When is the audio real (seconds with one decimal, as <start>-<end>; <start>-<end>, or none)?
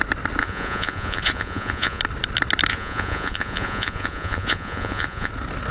0.0-0.4; 2.0-2.7; 5.3-5.7